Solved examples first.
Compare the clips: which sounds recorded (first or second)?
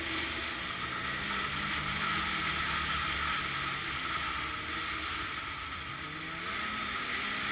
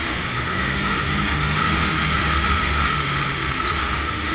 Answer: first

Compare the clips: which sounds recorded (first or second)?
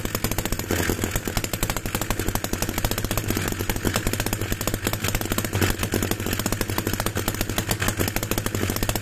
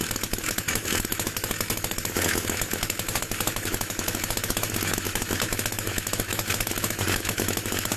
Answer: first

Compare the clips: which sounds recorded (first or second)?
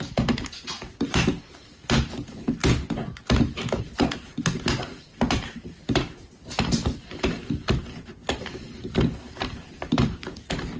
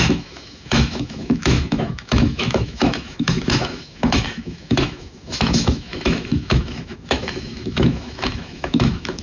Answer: first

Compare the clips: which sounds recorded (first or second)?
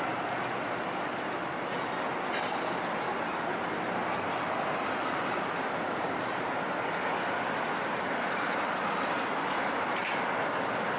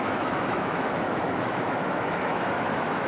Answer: first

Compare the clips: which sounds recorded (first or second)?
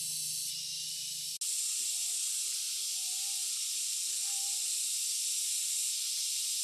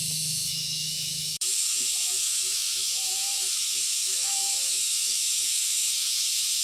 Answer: first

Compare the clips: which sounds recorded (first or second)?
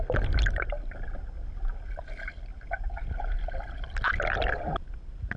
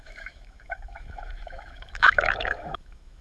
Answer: first